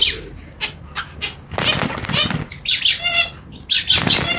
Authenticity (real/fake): real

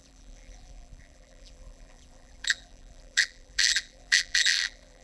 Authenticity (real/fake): fake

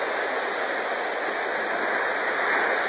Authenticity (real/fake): fake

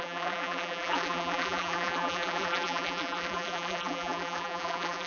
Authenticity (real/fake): fake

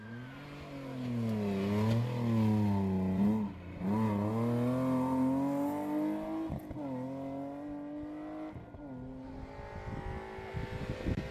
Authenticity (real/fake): real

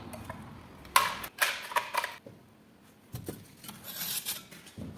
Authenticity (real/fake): real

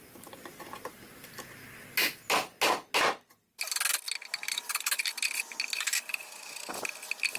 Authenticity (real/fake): real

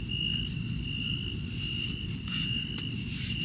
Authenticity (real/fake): real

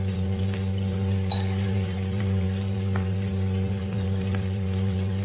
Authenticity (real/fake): fake